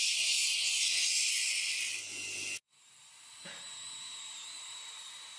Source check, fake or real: real